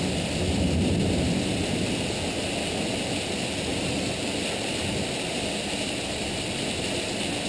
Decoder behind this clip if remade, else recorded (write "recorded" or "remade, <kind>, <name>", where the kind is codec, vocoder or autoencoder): recorded